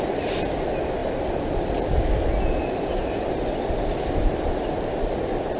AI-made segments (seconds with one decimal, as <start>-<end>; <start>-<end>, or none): none